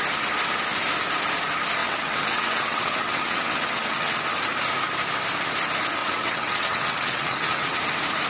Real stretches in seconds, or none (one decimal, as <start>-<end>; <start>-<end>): 0.0-1.8; 4.2-6.0; 7.8-8.3